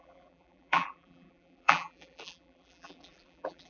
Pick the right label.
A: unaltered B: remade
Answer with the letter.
B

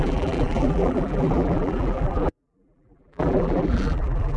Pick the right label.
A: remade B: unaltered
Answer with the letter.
A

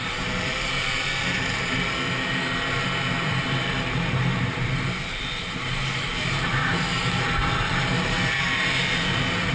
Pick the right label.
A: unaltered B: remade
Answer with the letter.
B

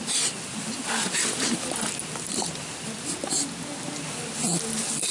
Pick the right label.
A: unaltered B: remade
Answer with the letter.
A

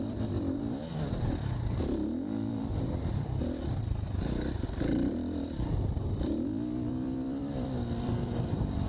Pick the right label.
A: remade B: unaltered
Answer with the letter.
A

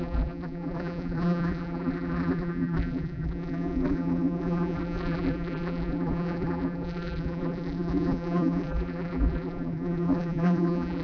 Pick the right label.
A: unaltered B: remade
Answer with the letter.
B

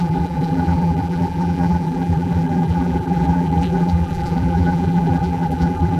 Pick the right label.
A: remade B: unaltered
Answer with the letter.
A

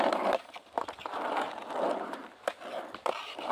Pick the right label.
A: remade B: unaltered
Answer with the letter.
A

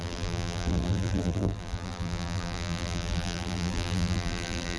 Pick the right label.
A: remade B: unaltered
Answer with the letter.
A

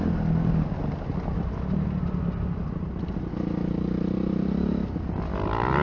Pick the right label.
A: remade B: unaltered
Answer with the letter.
B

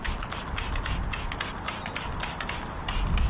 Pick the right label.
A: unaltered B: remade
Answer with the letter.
A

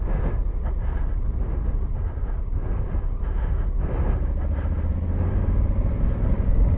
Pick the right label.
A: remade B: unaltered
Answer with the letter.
B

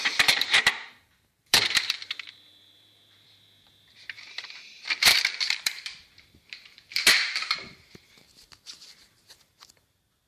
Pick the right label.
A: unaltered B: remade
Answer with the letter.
B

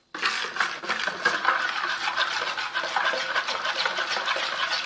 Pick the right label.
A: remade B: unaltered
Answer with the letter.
B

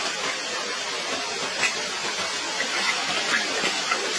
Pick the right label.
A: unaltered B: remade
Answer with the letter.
A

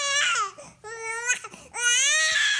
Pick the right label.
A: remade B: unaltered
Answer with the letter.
B